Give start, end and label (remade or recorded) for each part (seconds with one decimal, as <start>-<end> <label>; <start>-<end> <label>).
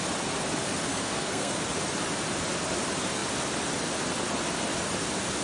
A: 0.0-0.9 recorded; 0.9-1.6 remade; 1.6-5.4 recorded